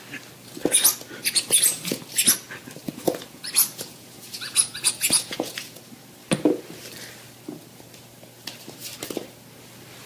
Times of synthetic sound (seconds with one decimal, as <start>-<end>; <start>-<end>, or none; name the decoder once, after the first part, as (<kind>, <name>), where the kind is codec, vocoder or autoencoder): 1.2-2.0 (vocoder, Vocos); 2.8-5.8